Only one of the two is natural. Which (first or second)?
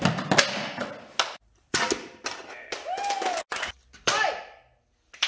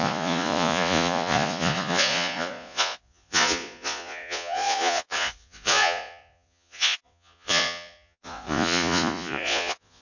first